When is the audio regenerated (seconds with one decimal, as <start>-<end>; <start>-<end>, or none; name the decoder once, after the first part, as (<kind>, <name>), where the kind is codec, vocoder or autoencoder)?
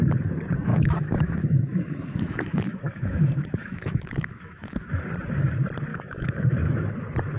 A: 0.7-5.0 (autoencoder, DAC-VAE); 5.9-6.9